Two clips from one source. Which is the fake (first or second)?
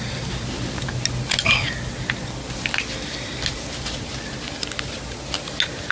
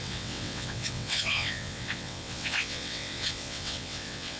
second